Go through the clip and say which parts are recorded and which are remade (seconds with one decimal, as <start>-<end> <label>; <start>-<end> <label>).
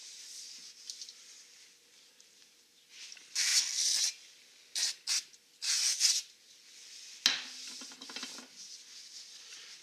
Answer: 0.0-9.8 recorded